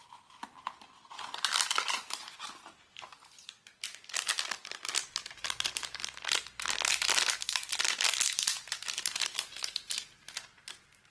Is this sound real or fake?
real